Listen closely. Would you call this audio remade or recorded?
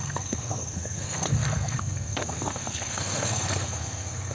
remade